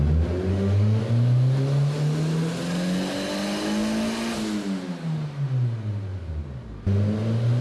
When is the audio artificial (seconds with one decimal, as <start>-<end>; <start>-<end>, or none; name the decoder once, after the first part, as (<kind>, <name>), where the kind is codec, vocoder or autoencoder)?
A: 0.5-1.0 (autoencoder, DAC-VAE)